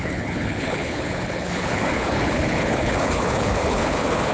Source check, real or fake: fake